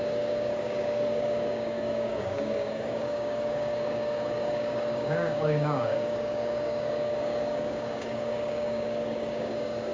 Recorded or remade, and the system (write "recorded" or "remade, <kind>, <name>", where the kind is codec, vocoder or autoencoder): remade, codec, DAC